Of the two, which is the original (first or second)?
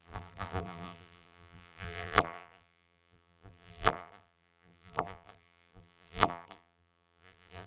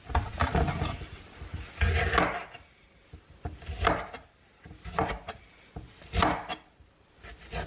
second